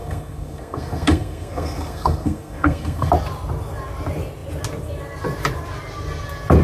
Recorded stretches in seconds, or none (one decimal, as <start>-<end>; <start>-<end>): 3.1-6.6